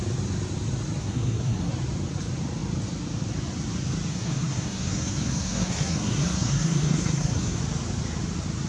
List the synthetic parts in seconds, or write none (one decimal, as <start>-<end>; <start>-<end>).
1.0-1.7; 4.1-7.6